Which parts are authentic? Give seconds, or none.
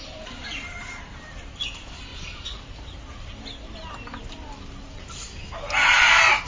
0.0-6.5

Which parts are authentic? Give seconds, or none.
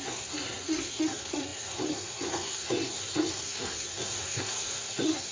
none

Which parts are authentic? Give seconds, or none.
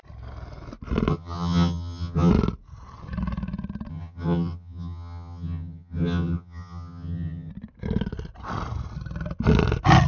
0.0-1.1; 2.3-3.9; 7.5-10.1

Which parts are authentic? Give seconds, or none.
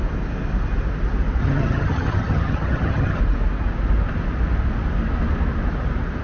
0.0-1.4; 3.2-6.2